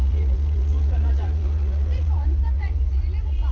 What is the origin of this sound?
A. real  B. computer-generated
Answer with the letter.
B